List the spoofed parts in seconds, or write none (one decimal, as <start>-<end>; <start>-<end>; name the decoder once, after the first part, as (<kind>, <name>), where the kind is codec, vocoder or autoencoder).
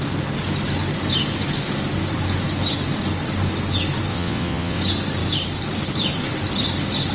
4.1-4.8 (vocoder, WaveNeXt)